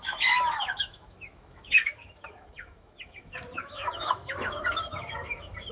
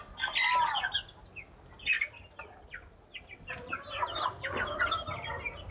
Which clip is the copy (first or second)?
first